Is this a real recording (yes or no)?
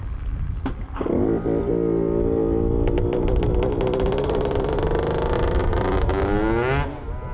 yes